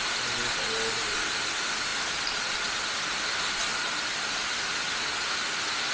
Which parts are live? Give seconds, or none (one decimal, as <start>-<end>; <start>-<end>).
0.0-5.9